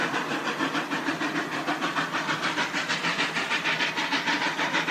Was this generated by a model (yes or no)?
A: no